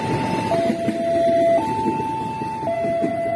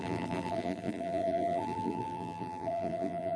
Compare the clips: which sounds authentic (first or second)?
first